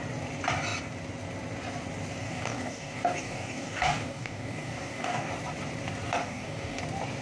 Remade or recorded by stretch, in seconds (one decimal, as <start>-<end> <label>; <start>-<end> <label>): 0.0-2.2 recorded; 2.2-5.3 remade; 5.3-6.2 recorded; 6.2-6.8 remade; 6.8-7.2 recorded